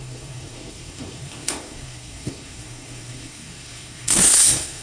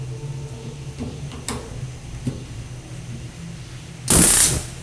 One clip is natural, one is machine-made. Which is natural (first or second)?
second